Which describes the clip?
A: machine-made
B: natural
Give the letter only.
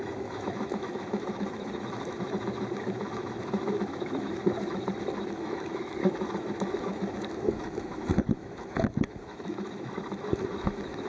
A